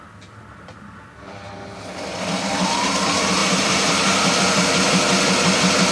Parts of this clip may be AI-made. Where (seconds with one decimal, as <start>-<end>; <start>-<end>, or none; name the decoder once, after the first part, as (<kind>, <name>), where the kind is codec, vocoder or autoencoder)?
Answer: 3.4-4.4 (vocoder, BigVGAN v2)